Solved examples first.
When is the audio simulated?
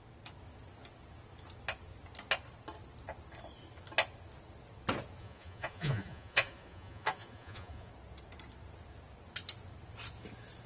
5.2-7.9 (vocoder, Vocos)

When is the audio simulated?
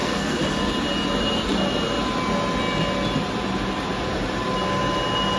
0.0-0.5 (codec, SNAC)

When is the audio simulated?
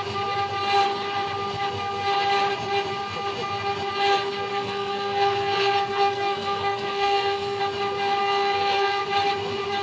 4.5-7.6 (codec, SNAC); 8.2-9.0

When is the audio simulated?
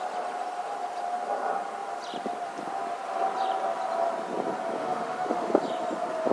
4.8-5.6 (autoencoder, DAC-VAE)